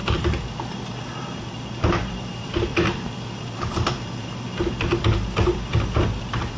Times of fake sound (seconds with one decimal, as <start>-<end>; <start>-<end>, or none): 0.0-6.6